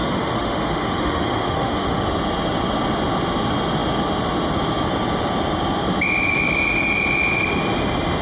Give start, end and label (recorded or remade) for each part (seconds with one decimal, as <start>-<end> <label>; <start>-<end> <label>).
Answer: 0.0-2.0 remade; 2.0-8.2 recorded